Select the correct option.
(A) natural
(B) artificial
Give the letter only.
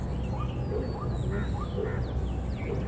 A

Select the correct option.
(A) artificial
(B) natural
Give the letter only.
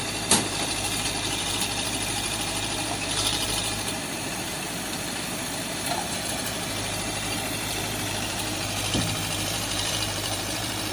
A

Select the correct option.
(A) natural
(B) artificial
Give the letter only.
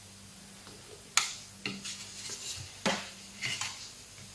A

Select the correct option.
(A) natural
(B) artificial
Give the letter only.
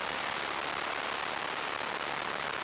A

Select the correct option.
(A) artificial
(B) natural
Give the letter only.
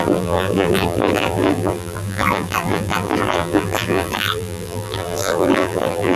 A